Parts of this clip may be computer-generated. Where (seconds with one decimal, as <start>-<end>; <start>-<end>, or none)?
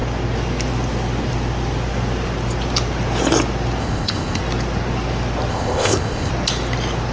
3.8-4.4; 5.5-6.3